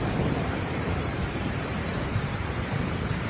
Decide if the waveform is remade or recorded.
remade